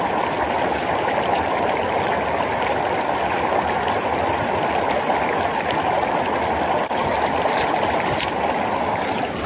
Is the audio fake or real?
real